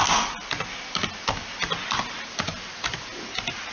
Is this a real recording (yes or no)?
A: yes